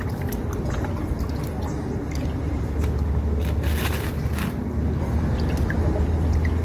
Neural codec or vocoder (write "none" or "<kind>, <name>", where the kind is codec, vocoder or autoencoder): none